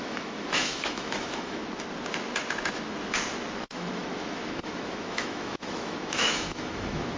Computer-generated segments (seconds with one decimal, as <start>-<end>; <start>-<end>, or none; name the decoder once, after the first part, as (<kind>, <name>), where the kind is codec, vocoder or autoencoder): 0.0-1.6 (autoencoder, DAC-VAE); 3.6-7.2